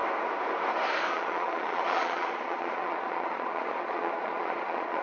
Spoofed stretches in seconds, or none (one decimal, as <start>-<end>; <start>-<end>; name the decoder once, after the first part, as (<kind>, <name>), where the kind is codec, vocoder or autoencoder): 1.1-5.0 (vocoder, Vocos)